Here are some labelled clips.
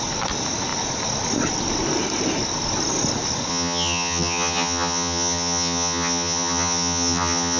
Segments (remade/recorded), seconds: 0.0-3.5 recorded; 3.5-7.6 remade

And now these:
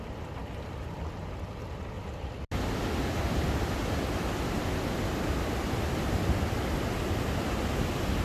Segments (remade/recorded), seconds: 0.0-8.2 recorded

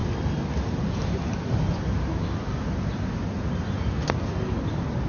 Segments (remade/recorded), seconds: 0.0-5.1 recorded

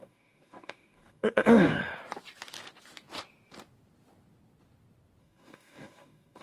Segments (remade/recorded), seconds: 0.0-1.8 remade; 1.8-5.2 recorded; 5.2-6.4 remade

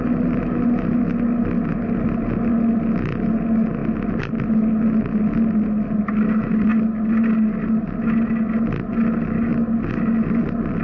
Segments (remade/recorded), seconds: 0.0-10.8 recorded

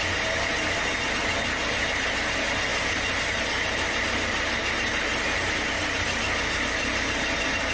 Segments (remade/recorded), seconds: 0.0-7.7 recorded

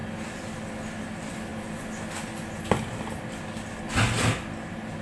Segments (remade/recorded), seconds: 0.0-5.0 recorded

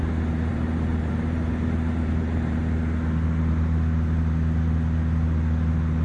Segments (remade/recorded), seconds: 0.0-0.5 recorded; 0.5-2.6 remade; 2.6-6.0 recorded